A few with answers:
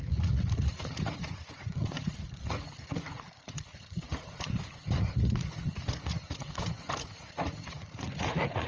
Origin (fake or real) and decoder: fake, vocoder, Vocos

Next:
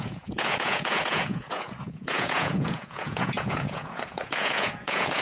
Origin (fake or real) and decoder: fake, vocoder, Vocos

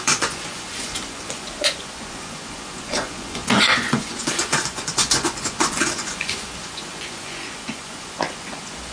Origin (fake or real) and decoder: fake, vocoder, Vocos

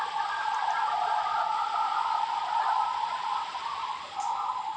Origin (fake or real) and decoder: real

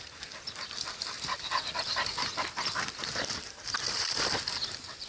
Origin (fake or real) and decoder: real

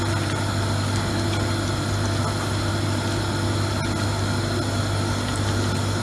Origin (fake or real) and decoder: real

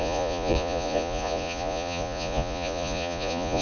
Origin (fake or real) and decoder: fake, vocoder, Vocos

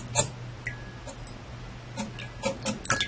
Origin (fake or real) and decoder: real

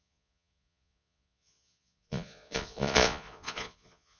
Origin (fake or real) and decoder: fake, vocoder, Vocos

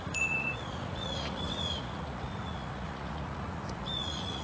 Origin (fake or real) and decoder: fake, vocoder, Vocos